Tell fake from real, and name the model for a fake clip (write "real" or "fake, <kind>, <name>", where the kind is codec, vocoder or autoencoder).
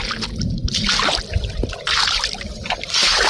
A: real